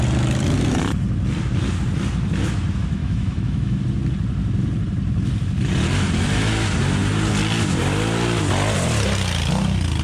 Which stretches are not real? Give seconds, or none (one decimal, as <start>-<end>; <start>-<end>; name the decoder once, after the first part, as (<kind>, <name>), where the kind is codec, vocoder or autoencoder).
3.0-3.8 (autoencoder, DAC-VAE)